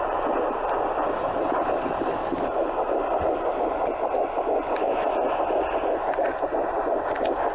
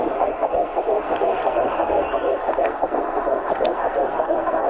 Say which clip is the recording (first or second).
first